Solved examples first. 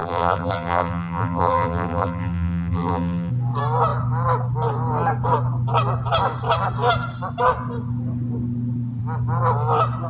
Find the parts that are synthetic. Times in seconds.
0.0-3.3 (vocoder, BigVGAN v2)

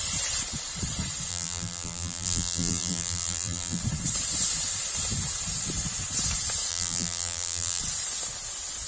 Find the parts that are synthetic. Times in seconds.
1.3-3.8 (vocoder, BigVGAN v2); 6.7-7.8

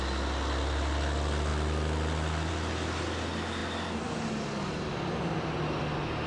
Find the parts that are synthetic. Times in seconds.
none

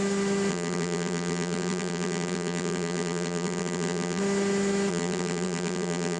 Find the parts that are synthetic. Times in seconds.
0.5-4.2 (vocoder, BigVGAN v2); 4.9-6.2

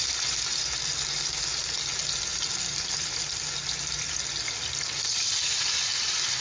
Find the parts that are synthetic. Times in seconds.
5.9-6.4 (vocoder, BigVGAN v2)

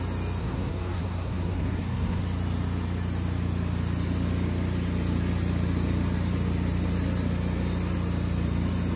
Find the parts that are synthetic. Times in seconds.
0.4-2.2 (codec, SNAC)